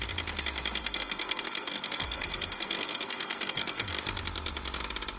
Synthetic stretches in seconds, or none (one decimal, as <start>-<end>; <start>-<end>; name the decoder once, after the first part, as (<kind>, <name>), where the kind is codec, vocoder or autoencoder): 0.8-3.9 (codec, SNAC)

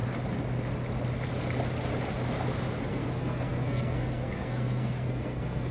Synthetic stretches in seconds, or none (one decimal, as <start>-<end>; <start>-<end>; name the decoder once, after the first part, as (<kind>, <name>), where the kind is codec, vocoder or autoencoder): 2.9-5.7 (codec, SNAC)

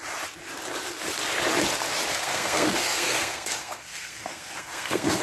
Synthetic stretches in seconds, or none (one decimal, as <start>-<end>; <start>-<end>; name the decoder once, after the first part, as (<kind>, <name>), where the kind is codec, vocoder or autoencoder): 2.1-5.2 (codec, SNAC)

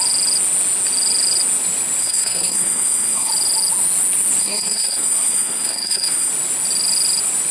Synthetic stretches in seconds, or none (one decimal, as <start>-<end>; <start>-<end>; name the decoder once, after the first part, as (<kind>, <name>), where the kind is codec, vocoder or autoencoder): 2.0-3.3 (codec, SNAC); 4.4-6.3

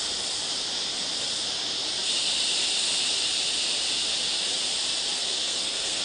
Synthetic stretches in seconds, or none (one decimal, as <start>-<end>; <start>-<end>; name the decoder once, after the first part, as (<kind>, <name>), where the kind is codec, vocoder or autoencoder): 5.1-6.0 (codec, SNAC)

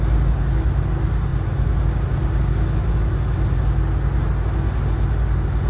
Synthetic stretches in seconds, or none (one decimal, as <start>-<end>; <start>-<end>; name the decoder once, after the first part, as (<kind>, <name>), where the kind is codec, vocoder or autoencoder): none

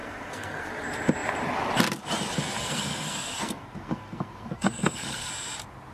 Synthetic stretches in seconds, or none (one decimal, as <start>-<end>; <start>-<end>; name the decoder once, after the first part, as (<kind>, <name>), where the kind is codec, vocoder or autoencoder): 0.0-0.7 (codec, SNAC); 2.5-5.3